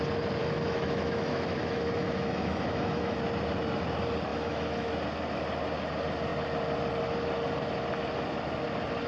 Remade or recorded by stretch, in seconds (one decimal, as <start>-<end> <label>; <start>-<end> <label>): 0.0-0.4 recorded; 0.4-3.2 remade; 3.2-4.3 recorded; 4.3-4.9 remade; 4.9-9.1 recorded